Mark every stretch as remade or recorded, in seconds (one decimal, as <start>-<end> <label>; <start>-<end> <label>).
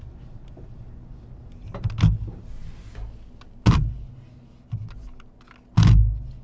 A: 0.0-6.4 recorded